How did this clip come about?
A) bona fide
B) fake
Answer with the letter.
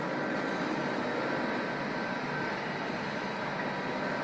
A